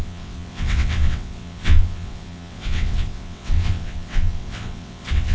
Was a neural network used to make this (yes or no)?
yes